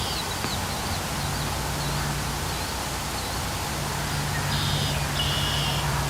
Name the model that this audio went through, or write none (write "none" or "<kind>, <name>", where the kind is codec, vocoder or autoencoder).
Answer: none